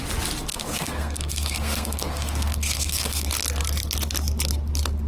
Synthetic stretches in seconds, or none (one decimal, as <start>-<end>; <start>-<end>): 0.5-3.3